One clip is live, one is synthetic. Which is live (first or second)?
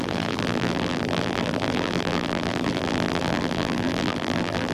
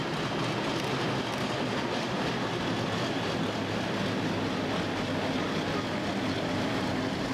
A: second